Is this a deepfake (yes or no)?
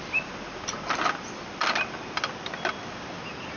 no